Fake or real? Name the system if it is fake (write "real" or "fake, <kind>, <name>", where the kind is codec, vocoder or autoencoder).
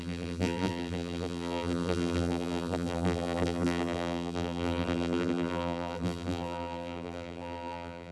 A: fake, vocoder, BigVGAN v2